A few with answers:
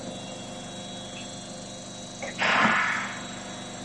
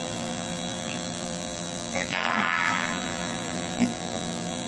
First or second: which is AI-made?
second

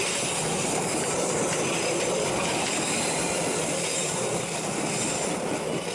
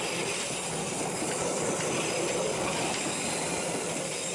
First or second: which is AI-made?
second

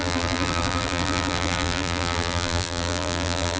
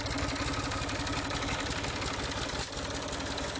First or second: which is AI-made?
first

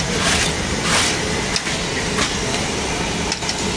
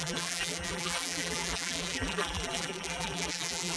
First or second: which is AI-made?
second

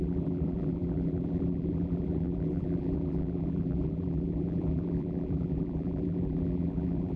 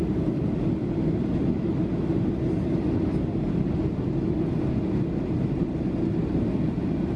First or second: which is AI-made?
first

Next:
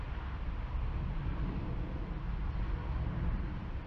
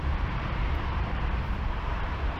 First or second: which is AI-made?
second